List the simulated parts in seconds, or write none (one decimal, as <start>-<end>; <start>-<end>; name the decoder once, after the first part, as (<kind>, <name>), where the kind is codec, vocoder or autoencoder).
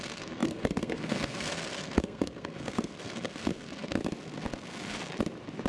0.0-4.0 (codec, SNAC)